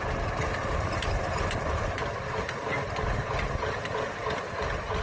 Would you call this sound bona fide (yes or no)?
yes